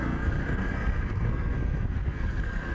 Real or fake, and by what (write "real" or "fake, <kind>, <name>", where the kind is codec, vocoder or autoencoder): fake, codec, SNAC